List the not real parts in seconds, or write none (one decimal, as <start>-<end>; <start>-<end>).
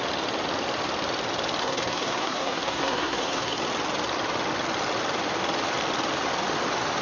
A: 1.6-3.6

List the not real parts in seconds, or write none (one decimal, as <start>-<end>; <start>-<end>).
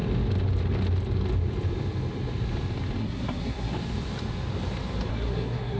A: 3.0-3.7; 5.1-5.8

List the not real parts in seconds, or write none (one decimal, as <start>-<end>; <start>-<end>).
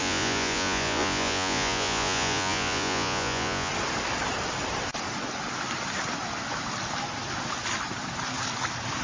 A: 0.0-3.7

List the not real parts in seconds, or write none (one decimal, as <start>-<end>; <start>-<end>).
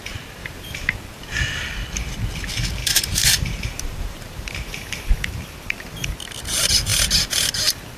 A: 0.4-1.0; 2.8-6.1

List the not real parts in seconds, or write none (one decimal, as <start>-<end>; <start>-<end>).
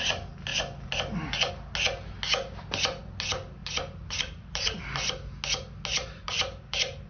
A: 3.6-4.8; 5.9-7.1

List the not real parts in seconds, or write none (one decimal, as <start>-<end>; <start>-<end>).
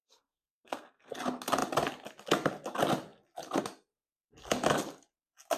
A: 0.0-1.1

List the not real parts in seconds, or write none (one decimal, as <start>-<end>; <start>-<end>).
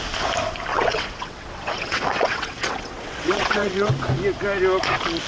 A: 0.7-3.9